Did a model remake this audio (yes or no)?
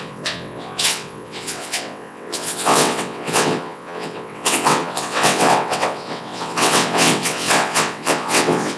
yes